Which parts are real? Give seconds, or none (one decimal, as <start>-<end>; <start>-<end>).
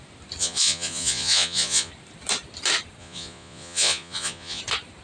0.0-0.4; 1.9-3.0; 4.6-5.0